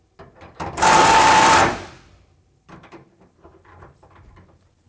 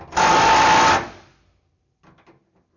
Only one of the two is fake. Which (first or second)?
first